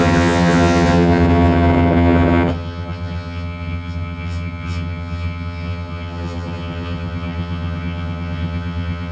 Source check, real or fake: fake